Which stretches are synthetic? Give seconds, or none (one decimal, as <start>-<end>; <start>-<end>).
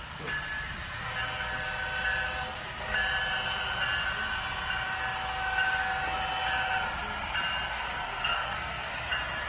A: 7.7-8.9